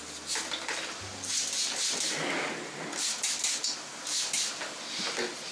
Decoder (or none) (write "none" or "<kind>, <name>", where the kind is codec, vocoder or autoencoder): none